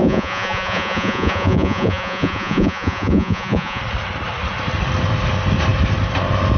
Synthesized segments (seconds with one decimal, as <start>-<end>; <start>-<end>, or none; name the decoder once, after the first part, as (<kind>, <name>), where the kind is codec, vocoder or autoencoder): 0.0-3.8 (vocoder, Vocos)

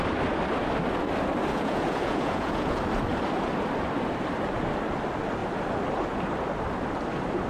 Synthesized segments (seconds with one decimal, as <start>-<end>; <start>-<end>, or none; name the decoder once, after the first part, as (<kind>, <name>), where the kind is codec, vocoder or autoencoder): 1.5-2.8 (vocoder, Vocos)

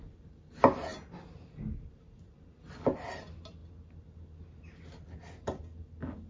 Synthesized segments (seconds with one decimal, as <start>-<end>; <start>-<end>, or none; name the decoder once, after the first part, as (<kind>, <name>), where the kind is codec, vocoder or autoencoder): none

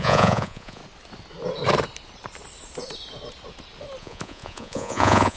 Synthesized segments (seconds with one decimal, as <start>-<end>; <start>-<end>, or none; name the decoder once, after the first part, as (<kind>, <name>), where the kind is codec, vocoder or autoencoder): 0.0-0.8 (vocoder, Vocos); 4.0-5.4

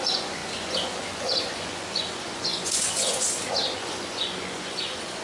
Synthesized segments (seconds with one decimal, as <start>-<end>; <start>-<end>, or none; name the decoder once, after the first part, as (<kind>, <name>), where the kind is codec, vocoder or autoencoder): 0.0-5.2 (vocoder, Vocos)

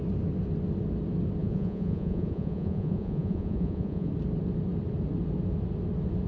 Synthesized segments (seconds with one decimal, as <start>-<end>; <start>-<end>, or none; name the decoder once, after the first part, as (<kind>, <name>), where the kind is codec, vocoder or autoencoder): 1.4-4.1 (vocoder, Vocos)

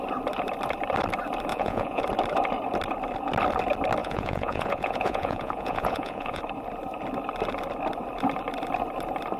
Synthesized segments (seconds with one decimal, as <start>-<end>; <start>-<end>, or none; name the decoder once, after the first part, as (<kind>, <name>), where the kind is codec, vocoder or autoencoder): 1.5-2.0 (vocoder, Vocos); 4.0-6.4

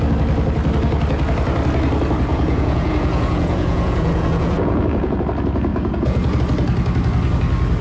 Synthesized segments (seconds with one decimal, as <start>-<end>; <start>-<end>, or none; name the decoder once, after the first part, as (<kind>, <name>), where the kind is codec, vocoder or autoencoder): 2.3-5.2 (vocoder, Vocos); 5.7-6.4